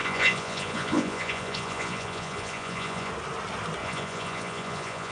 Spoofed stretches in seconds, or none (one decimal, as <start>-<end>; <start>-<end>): 0.0-3.1; 3.8-5.1

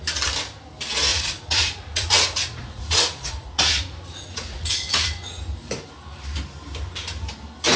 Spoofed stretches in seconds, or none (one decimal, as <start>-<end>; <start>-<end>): 1.1-5.4

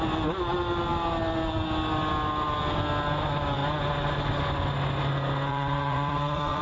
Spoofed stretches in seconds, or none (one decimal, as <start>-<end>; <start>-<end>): 5.5-6.6

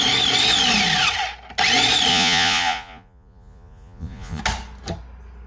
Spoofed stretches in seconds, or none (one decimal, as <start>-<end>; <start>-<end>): 2.1-4.4

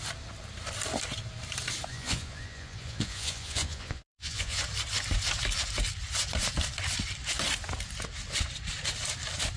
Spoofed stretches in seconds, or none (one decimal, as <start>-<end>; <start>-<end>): 1.9-4.6

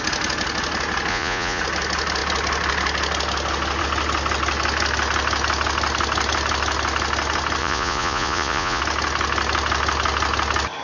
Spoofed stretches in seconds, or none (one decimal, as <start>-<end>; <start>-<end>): 1.1-1.6; 7.6-8.8

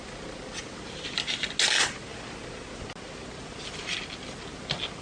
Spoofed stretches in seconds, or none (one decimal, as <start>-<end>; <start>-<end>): none

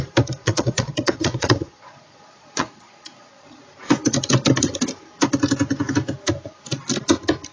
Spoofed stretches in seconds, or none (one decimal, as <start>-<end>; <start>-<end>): 0.4-3.6